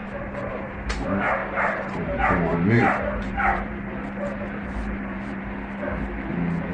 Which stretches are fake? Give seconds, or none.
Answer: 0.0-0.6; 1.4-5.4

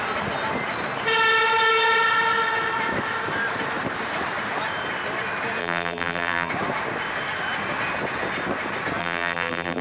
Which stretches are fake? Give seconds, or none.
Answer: 5.6-6.5; 9.0-9.8

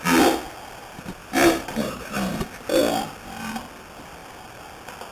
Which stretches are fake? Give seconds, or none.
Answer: 1.2-2.3

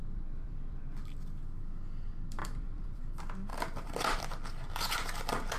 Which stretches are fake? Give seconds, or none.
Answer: 0.0-0.8; 2.4-3.1; 3.5-4.2

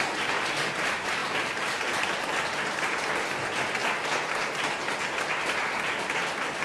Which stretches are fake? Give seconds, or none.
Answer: 1.2-1.9

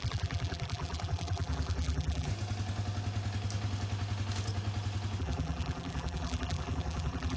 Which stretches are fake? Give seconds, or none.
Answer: 0.0-2.3; 5.2-7.4

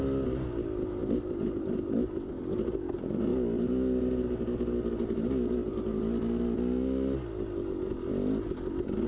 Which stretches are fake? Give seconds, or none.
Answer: 1.0-2.3

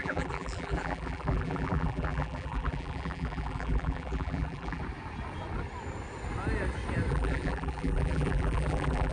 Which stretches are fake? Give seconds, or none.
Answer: 0.0-4.8; 7.1-9.1